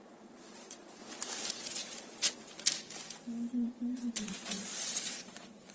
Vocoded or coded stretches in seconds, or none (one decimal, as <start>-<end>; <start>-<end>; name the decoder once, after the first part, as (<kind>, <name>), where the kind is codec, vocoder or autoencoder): 0.0-1.0 (vocoder, Vocos); 1.5-2.1; 3.5-5.7